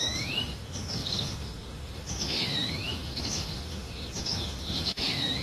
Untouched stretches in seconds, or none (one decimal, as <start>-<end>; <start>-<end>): none